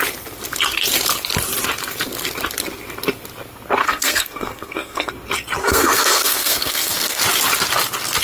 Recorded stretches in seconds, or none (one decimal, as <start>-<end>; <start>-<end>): 0.0-3.8; 5.1-5.6; 7.2-8.2